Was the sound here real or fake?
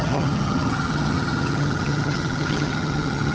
fake